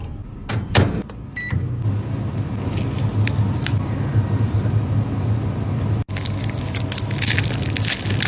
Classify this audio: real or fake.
real